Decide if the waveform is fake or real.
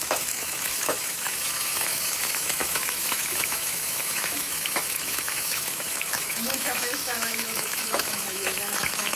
fake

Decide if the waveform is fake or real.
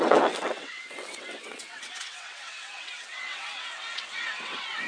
fake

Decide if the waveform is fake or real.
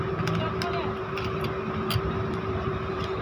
real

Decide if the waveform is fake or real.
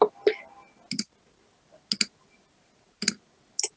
real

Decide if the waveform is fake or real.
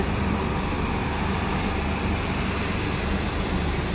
fake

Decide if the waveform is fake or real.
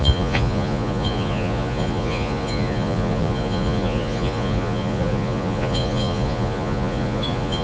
fake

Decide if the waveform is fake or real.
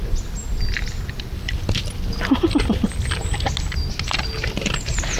real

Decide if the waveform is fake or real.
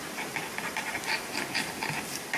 real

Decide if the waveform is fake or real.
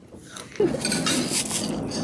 real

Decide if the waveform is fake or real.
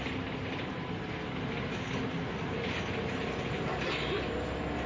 real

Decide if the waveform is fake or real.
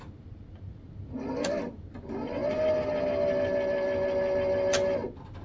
real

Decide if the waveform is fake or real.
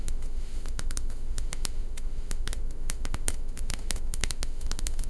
fake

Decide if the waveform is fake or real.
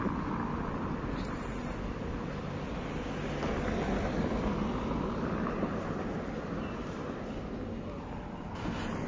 real